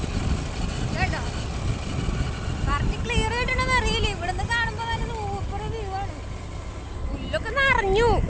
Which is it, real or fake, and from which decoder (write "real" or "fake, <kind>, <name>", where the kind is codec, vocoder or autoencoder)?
real